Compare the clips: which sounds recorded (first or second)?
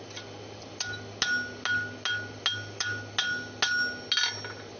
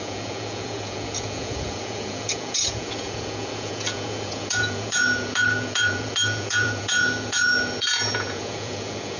first